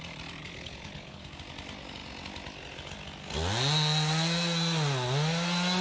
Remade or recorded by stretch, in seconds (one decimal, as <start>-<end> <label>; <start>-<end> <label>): 0.0-0.4 recorded; 0.4-1.2 remade; 1.2-5.8 recorded

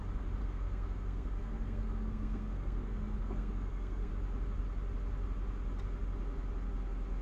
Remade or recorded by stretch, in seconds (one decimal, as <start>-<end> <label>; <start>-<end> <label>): 0.0-0.4 recorded; 0.4-4.1 remade; 4.1-7.2 recorded

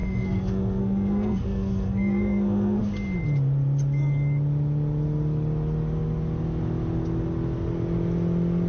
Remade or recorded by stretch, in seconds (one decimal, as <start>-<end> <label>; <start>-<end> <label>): 0.0-2.8 remade; 2.8-8.7 recorded

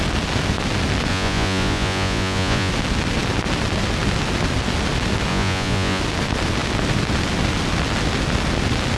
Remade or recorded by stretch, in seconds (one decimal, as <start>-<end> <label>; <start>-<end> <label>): 0.0-1.1 recorded; 1.1-2.7 remade; 2.7-5.3 recorded; 5.3-6.0 remade; 6.0-9.0 recorded

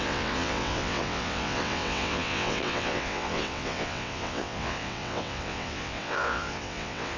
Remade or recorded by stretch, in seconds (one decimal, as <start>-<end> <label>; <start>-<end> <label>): 0.0-7.2 remade

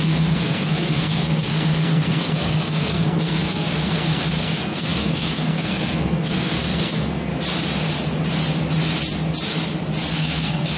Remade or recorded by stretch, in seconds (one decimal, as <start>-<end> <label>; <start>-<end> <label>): 0.0-7.3 remade; 7.3-10.1 recorded; 10.1-10.8 remade